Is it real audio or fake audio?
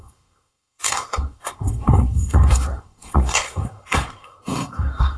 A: fake